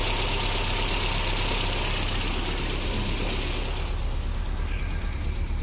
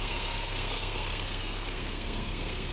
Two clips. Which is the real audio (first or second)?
first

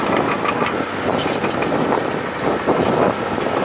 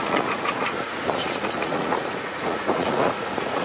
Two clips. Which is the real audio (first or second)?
first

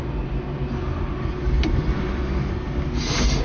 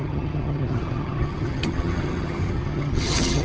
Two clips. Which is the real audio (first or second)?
first